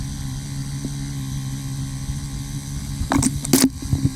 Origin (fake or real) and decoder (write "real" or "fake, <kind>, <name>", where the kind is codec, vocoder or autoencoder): real